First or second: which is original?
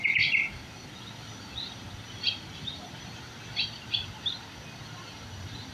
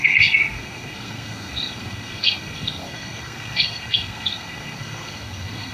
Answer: first